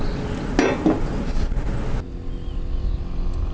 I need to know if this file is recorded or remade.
recorded